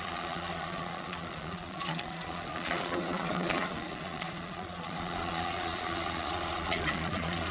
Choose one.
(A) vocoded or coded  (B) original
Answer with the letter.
A